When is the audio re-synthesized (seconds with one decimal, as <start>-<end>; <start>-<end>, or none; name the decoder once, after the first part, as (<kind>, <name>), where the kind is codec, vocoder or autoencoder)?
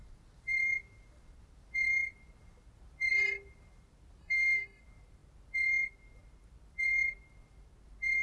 4.2-4.8 (codec, SNAC)